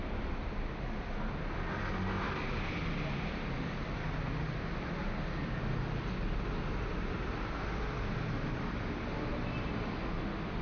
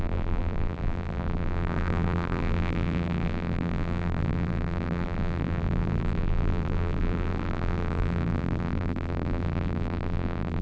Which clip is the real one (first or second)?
first